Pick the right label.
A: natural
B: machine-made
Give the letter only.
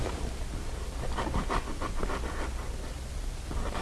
A